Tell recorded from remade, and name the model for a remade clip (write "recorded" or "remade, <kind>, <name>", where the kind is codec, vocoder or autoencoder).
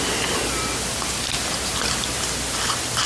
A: recorded